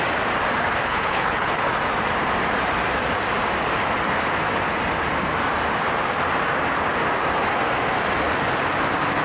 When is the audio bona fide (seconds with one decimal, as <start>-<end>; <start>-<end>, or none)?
0.0-0.9; 1.6-9.2